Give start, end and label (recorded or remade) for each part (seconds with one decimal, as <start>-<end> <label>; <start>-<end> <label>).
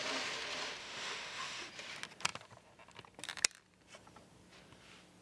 0.0-0.8 recorded; 0.8-1.7 remade; 1.7-5.2 recorded